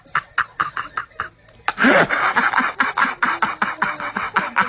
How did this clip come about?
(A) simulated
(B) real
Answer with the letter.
B